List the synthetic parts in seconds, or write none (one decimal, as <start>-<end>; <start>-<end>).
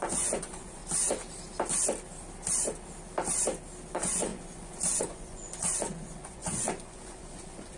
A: 0.0-0.8; 3.9-7.8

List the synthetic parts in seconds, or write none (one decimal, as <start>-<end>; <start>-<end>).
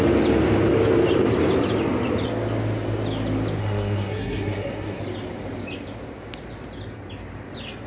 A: 3.6-5.0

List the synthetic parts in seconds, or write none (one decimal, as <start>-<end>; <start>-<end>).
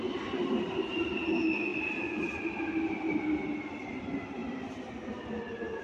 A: none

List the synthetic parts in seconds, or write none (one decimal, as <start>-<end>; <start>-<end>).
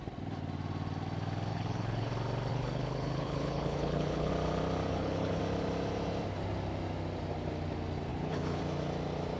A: 1.5-2.1; 2.5-4.3; 4.9-5.4; 8.1-8.6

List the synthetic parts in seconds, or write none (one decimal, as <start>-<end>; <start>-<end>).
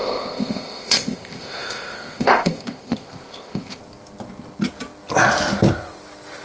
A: 0.0-3.8